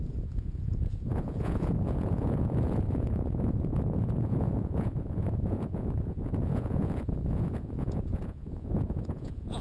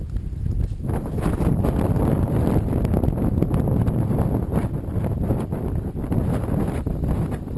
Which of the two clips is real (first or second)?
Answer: second